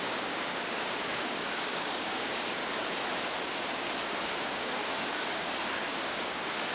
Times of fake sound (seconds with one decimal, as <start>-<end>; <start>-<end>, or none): 0.0-2.6; 3.7-6.7